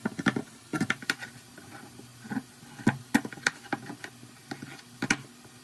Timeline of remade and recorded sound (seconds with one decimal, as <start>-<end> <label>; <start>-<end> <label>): 0.0-5.6 recorded

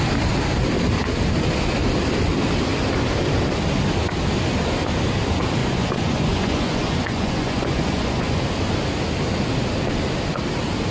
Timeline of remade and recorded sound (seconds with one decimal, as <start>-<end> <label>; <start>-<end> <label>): 0.0-5.6 recorded; 5.6-8.4 remade; 8.4-10.9 recorded

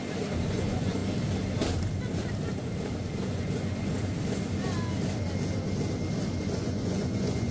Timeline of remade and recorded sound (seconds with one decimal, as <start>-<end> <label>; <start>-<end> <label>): 0.0-0.5 recorded; 0.5-1.0 remade; 1.0-3.3 recorded; 3.3-3.8 remade; 3.8-6.4 recorded; 6.4-7.5 remade

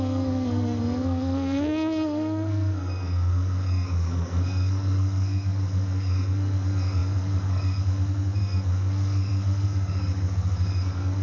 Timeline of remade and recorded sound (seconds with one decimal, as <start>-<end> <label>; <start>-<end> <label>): 0.0-11.2 remade

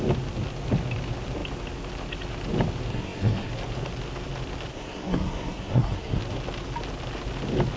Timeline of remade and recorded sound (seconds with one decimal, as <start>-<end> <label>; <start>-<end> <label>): 0.0-2.9 recorded; 2.9-3.5 remade; 3.5-4.7 recorded; 4.7-6.2 remade; 6.2-7.8 recorded